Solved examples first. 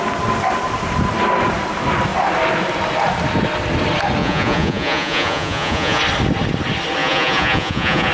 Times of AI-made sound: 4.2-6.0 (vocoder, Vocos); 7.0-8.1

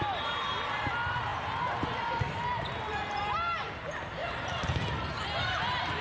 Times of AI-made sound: none

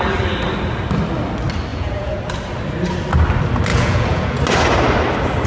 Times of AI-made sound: 1.7-2.2 (vocoder, Vocos); 3.7-4.4

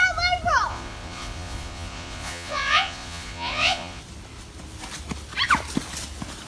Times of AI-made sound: 0.7-4.0 (vocoder, Vocos)

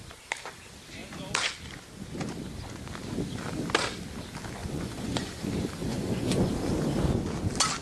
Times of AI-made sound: 4.6-5.5 (vocoder, Vocos); 5.9-6.5

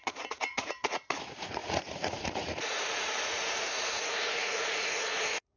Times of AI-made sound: 0.0-5.6 (vocoder, Vocos)

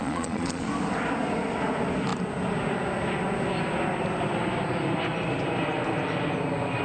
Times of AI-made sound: 0.0-0.7 (vocoder, Vocos)